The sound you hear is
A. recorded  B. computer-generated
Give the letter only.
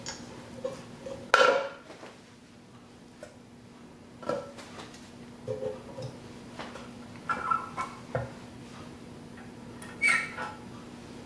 A